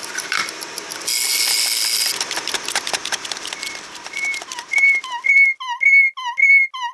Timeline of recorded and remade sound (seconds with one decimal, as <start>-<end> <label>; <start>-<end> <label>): 0.0-2.1 remade; 2.1-3.0 recorded; 3.0-5.0 remade; 5.0-6.9 recorded